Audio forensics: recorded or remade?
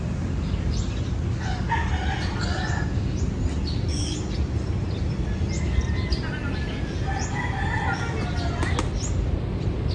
recorded